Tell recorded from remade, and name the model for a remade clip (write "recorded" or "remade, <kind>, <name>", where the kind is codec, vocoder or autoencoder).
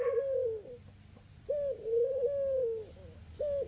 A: recorded